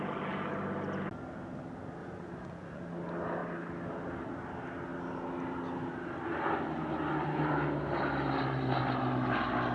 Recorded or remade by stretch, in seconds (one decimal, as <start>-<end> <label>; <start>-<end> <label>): 0.0-2.0 recorded; 2.0-2.8 remade; 2.8-9.7 recorded